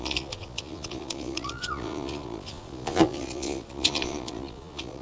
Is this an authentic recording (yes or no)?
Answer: no